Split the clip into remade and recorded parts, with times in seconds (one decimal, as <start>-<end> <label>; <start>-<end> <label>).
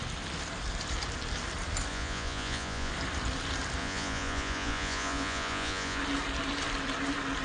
0.0-1.9 recorded; 1.9-2.9 remade; 2.9-3.8 recorded; 3.8-6.0 remade; 6.0-7.4 recorded